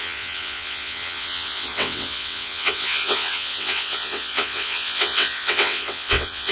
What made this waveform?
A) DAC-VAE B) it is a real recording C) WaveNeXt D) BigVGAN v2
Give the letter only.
C